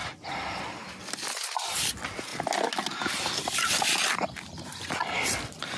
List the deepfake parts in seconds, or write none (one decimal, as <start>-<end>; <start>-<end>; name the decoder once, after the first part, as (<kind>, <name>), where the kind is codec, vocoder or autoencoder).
none